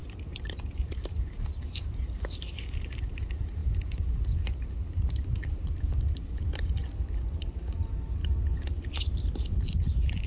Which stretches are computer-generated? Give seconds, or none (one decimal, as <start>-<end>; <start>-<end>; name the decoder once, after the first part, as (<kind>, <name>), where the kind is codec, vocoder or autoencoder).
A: 0.0-8.2 (vocoder, BigVGAN v2); 8.8-10.3